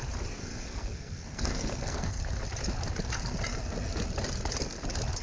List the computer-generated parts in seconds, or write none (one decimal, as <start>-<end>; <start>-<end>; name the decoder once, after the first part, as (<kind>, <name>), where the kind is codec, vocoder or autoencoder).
0.4-2.2 (codec, SNAC)